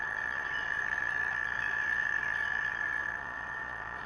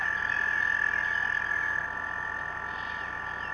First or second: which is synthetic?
first